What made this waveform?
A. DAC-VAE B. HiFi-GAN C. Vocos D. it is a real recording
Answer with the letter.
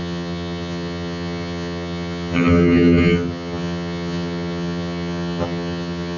B